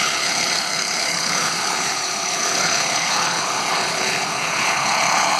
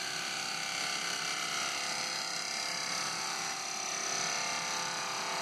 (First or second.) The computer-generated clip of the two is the first